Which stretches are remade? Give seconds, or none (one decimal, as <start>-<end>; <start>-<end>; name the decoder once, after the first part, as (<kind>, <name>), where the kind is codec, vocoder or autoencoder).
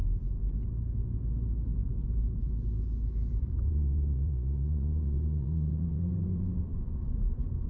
3.4-7.7 (vocoder, Vocos)